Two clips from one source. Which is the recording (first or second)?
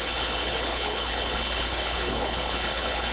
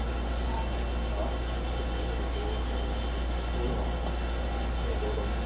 second